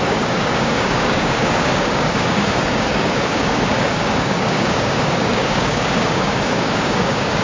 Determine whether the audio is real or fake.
fake